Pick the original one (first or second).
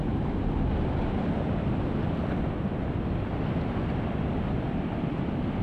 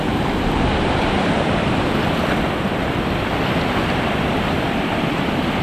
first